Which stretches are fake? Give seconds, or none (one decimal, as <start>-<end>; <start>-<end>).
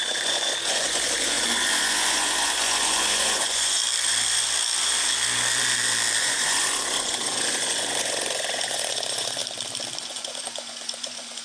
0.0-3.8; 6.2-9.4; 10.0-11.4